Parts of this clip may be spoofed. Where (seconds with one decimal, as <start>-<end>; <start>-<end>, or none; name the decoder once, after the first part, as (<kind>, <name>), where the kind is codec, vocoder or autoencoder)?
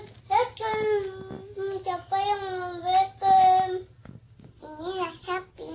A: none